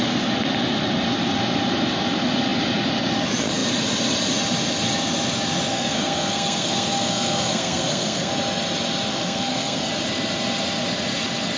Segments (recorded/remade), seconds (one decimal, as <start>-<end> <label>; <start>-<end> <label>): 0.0-5.7 recorded; 5.7-8.3 remade; 8.3-9.1 recorded; 9.1-9.9 remade; 9.9-11.6 recorded